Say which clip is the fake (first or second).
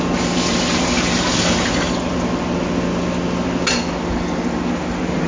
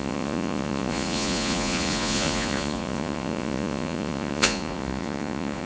second